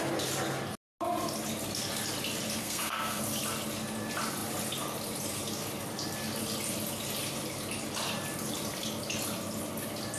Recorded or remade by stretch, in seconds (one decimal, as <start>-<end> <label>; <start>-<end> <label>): 0.0-2.6 recorded; 2.6-3.2 remade; 3.2-10.2 recorded